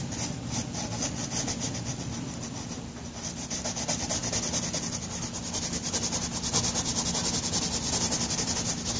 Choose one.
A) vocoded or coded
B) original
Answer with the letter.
B